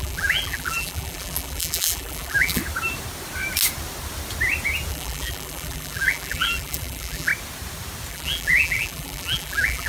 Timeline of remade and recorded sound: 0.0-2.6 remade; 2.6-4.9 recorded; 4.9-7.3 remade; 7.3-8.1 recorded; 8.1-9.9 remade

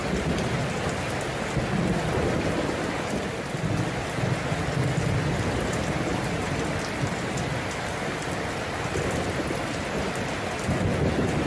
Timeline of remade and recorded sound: 0.0-11.5 recorded

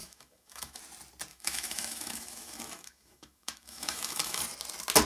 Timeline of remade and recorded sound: 0.0-0.8 remade; 0.8-1.3 recorded; 1.3-4.4 remade; 4.4-5.1 recorded

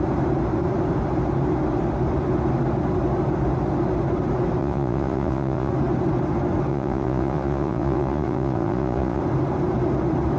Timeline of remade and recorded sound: 0.0-4.6 recorded; 4.6-5.7 remade; 5.7-6.7 recorded; 6.7-9.2 remade; 9.2-10.4 recorded

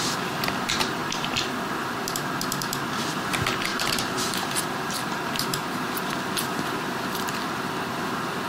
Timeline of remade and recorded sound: 0.0-3.7 recorded; 3.7-6.1 remade; 6.1-8.5 recorded

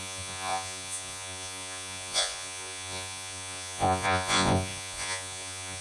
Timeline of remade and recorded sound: 0.0-5.8 remade